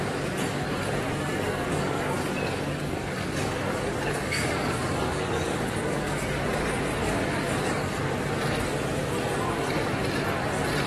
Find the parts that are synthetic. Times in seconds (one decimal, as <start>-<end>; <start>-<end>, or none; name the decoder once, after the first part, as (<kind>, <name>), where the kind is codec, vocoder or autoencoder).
1.3-6.2 (codec, DAC); 7.0-8.0